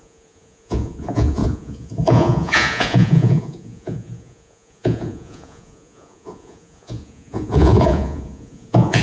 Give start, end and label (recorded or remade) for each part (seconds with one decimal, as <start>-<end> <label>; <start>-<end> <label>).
0.0-9.0 remade